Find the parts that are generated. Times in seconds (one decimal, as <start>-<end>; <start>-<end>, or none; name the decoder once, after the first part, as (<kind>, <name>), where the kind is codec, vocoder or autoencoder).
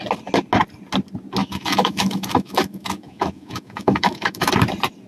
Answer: 1.4-4.5 (autoencoder, DAC-VAE)